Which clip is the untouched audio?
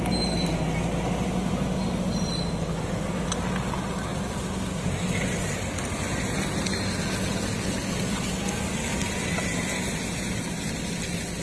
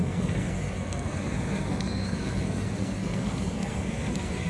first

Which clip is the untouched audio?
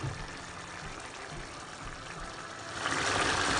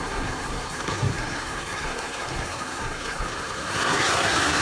first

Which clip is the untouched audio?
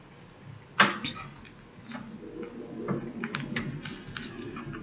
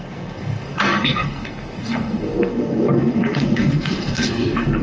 first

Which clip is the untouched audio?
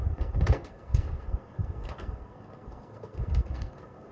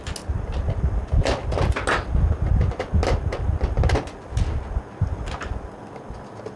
second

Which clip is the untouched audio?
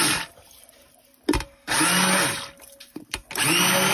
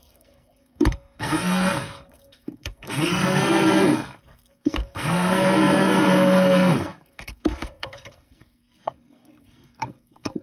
first